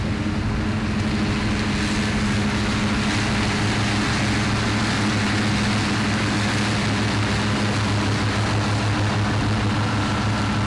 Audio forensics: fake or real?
real